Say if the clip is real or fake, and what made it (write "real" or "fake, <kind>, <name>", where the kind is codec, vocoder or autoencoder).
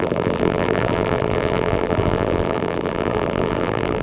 fake, vocoder, BigVGAN v2